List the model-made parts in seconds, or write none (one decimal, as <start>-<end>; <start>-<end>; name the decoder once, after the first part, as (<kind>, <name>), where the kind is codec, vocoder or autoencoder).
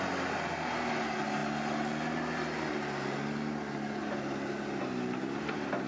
none